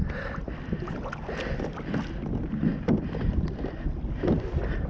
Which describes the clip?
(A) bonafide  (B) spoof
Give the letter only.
A